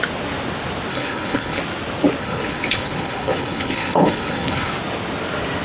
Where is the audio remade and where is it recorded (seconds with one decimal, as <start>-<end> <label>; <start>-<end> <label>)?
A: 0.0-0.9 recorded; 0.9-1.6 remade; 1.6-2.2 recorded; 2.2-4.7 remade; 4.7-5.6 recorded